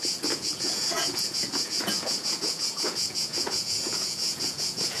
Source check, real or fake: fake